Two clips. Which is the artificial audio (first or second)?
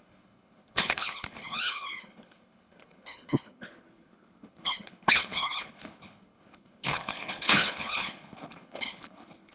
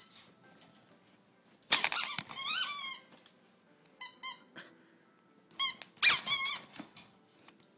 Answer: first